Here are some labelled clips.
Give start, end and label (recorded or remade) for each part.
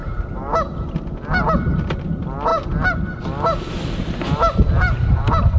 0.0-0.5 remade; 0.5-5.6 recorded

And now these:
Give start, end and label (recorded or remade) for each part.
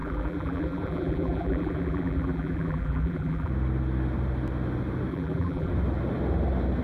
0.0-3.5 remade; 3.5-5.1 recorded; 5.1-5.7 remade; 5.7-6.8 recorded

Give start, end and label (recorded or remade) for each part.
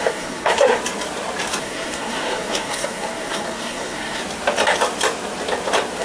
0.0-0.8 remade; 0.8-1.6 recorded; 1.6-4.2 remade; 4.2-6.0 recorded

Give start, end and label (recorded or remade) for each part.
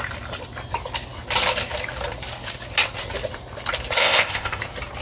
0.0-4.0 recorded; 4.0-4.6 remade; 4.6-5.0 recorded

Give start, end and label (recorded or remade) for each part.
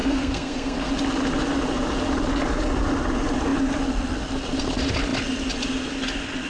0.0-0.9 remade; 0.9-6.5 recorded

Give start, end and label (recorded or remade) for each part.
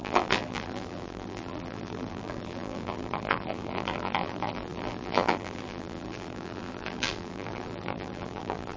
0.0-8.8 remade